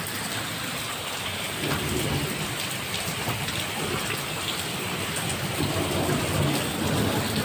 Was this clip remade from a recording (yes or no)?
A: no